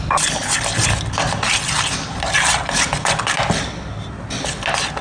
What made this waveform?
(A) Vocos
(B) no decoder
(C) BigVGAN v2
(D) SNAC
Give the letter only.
B